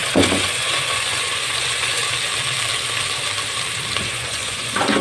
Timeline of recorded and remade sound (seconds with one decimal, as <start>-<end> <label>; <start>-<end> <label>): 0.0-2.0 remade; 2.0-4.0 recorded; 4.0-5.0 remade